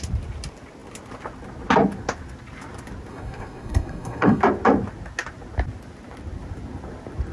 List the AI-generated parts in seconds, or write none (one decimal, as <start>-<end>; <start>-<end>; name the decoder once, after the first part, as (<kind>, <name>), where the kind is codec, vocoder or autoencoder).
3.1-4.4 (codec, SNAC)